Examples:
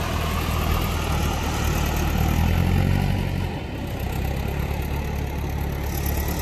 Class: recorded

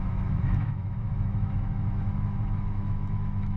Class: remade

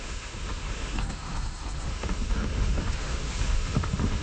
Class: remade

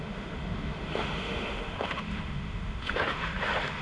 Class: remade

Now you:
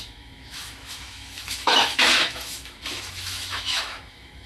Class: remade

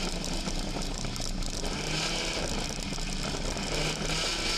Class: recorded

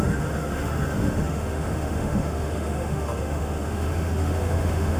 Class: remade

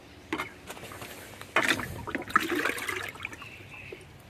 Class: recorded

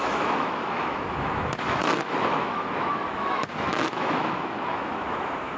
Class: remade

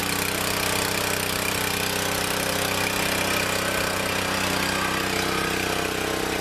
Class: recorded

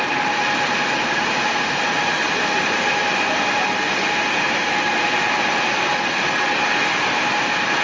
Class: recorded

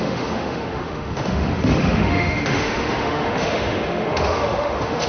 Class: remade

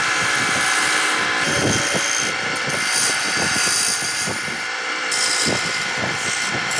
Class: recorded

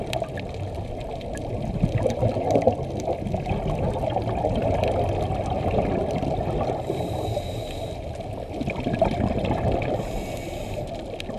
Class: recorded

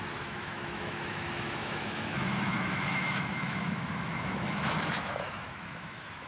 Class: remade